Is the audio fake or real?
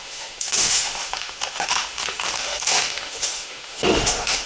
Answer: fake